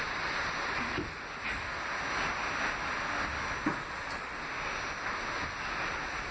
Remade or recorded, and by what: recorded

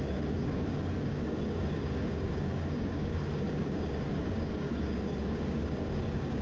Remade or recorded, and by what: remade, codec, DAC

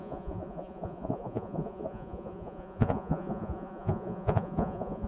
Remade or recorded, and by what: remade, vocoder, Vocos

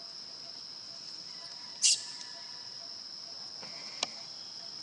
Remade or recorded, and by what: recorded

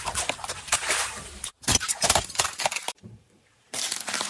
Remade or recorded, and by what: remade, vocoder, BigVGAN v2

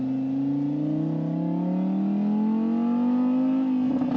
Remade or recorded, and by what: recorded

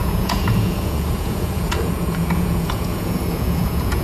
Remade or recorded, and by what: remade, vocoder, Vocos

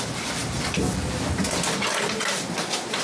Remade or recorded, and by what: recorded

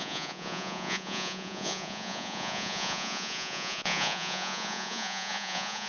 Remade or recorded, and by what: remade, vocoder, Vocos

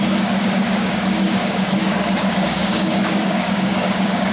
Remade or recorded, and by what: remade, codec, DAC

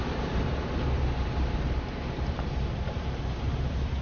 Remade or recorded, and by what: remade, vocoder, BigVGAN v2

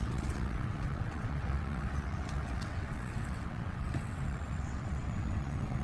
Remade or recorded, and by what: remade, vocoder, WaveNeXt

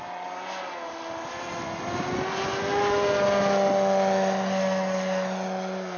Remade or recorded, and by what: recorded